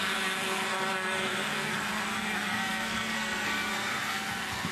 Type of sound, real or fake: fake